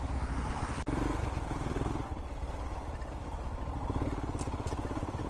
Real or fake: fake